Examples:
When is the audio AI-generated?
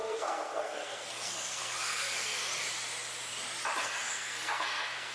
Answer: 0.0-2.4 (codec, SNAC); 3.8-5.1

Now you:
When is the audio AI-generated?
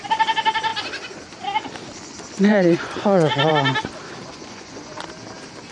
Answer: 2.5-3.5 (vocoder, Vocos); 4.3-5.0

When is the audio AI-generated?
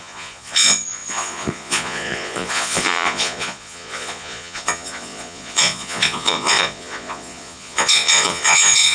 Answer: 0.0-8.9 (vocoder, Vocos)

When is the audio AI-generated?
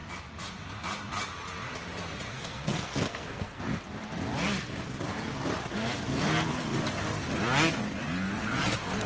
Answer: 2.3-3.6 (codec, SNAC)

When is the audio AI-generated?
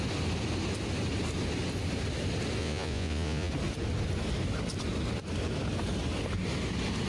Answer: 2.6-3.5 (vocoder, Vocos)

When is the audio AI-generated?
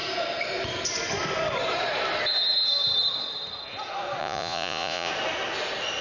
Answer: 4.2-5.1 (vocoder, Vocos)